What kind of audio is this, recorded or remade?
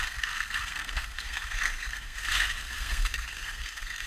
remade